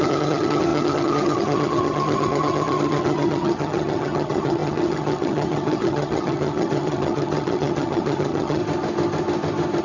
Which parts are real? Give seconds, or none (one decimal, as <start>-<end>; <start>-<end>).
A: 8.6-9.8